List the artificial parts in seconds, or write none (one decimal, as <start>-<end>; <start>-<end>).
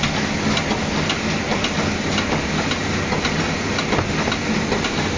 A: none